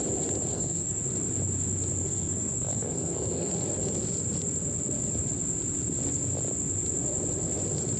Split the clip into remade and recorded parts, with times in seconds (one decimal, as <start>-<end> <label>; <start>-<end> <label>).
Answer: 0.0-0.5 recorded; 0.5-1.0 remade; 1.0-2.0 recorded; 2.0-3.5 remade; 3.5-8.0 recorded